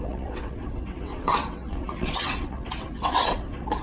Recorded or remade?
remade